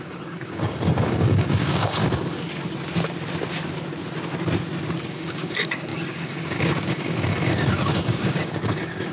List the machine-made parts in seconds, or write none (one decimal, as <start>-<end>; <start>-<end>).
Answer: 0.0-2.0; 5.0-9.1